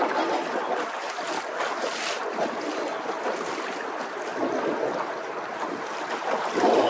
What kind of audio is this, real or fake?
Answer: real